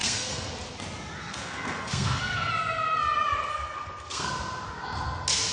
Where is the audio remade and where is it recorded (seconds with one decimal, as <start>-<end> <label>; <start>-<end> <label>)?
0.0-0.5 remade; 0.5-1.2 recorded; 1.2-2.5 remade; 2.5-3.5 recorded; 3.5-4.3 remade; 4.3-5.5 recorded